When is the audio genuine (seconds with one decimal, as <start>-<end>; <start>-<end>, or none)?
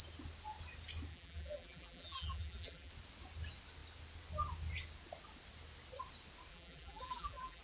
0.0-1.1; 2.9-6.5